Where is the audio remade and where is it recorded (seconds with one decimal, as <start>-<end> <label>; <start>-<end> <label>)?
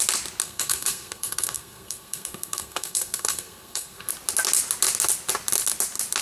0.0-0.4 recorded; 0.4-4.1 remade; 4.1-6.2 recorded